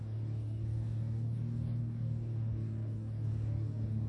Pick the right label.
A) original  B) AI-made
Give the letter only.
B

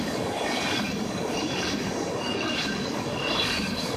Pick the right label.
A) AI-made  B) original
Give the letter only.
A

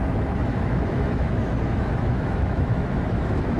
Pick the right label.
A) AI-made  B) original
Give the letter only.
A